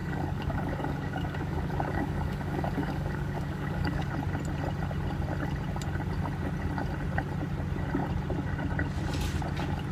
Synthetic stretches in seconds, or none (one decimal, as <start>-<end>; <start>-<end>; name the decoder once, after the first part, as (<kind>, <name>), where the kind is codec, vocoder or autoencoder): 0.0-4.1 (codec, DAC)

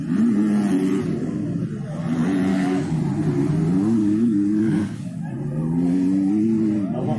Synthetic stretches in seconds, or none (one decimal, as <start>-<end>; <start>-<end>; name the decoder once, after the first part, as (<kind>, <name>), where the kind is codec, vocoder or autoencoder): 2.5-3.0 (codec, DAC); 4.0-5.2

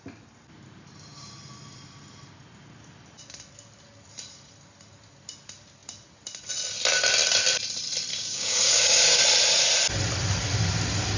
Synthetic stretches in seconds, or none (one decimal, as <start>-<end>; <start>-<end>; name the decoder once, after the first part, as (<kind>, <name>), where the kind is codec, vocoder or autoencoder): 8.1-9.2 (codec, DAC)

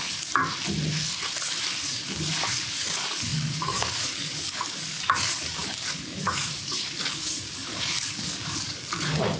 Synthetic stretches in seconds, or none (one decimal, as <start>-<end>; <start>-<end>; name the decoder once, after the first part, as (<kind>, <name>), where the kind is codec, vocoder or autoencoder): 0.0-0.4 (codec, DAC); 1.8-9.4